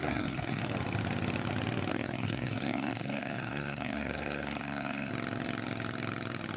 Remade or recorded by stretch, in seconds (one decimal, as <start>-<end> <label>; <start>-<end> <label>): 0.0-0.6 remade; 0.6-1.9 recorded; 1.9-5.1 remade; 5.1-6.6 recorded